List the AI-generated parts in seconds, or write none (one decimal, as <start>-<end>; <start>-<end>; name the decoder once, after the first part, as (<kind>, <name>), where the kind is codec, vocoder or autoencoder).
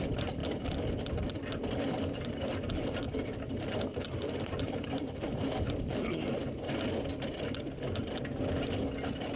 0.0-0.4 (vocoder, BigVGAN v2); 2.0-6.4